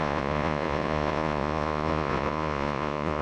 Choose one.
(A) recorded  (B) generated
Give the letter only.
B